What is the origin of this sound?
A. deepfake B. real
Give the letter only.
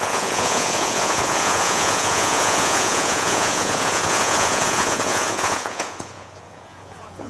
A